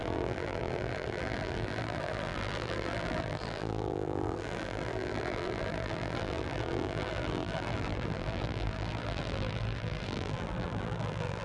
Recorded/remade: remade